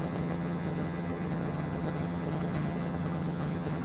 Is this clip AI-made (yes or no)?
yes